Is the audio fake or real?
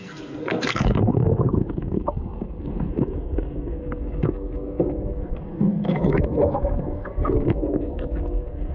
fake